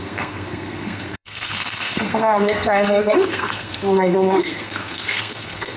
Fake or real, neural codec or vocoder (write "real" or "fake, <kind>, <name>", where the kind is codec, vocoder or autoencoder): fake, codec, SNAC